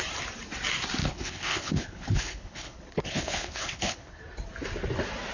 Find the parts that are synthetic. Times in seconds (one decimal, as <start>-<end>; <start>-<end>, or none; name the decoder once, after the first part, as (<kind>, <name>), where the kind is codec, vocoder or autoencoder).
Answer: 1.0-4.2 (codec, HILCodec)